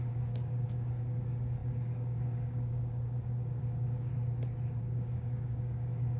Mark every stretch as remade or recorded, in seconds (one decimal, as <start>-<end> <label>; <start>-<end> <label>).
0.0-4.1 remade; 4.1-4.8 recorded; 4.8-6.2 remade